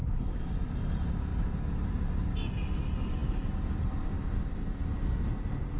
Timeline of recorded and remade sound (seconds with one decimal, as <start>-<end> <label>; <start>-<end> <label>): 0.0-0.5 remade; 0.5-5.8 recorded